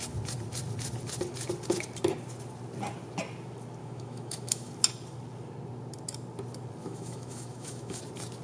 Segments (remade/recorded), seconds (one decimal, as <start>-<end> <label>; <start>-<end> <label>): 0.0-3.8 recorded; 3.8-4.7 remade; 4.7-6.8 recorded; 6.8-8.0 remade; 8.0-8.4 recorded